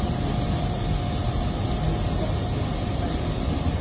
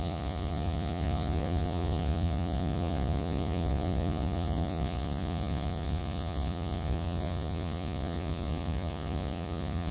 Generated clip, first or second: second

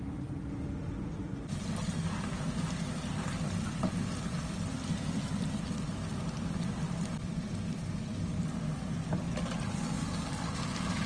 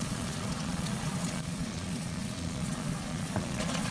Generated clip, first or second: second